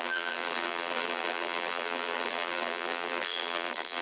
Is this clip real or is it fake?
fake